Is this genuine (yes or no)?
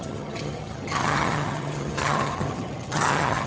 no